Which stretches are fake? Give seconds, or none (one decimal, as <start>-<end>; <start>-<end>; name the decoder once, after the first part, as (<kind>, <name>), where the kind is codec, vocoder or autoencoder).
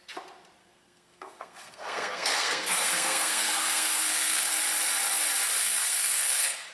0.6-4.6 (codec, SNAC); 5.6-6.7